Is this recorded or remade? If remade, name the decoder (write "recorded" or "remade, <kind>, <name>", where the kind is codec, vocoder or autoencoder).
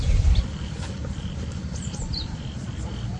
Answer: recorded